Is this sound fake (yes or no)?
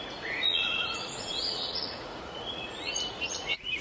yes